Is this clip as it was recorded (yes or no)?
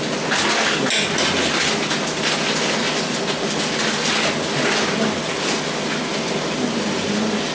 yes